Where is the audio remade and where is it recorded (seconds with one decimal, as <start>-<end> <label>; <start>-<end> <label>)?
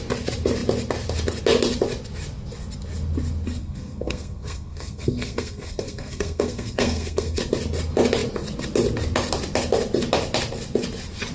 0.0-3.6 recorded; 3.6-7.4 remade; 7.4-11.3 recorded